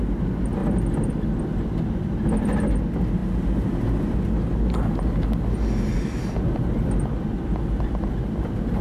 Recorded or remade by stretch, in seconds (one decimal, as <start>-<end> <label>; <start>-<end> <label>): 0.0-8.8 recorded